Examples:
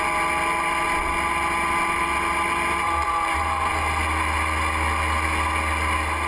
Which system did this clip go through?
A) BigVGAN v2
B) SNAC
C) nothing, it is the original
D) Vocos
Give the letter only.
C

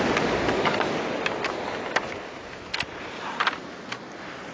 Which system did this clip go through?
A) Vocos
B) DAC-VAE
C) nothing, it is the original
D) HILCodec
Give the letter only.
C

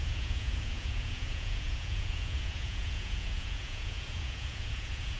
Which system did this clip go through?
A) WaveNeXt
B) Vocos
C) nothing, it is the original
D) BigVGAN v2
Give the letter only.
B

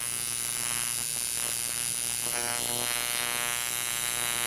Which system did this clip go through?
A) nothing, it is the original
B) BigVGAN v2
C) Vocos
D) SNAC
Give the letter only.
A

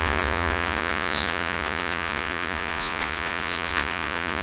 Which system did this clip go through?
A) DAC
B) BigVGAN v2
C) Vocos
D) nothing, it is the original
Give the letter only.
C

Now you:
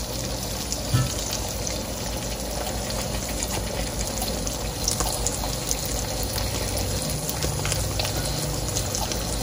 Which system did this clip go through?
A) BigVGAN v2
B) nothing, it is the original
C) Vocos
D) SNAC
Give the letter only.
B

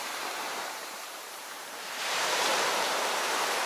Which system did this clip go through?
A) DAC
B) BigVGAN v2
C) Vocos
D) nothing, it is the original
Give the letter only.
B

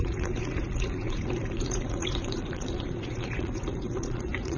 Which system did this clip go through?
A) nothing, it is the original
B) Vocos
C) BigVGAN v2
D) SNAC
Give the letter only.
B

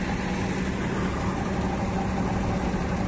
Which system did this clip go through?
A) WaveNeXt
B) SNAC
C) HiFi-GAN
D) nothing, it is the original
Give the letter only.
D